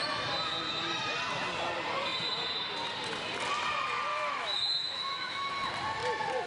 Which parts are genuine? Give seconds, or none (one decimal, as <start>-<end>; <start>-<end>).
0.0-4.1; 5.5-6.5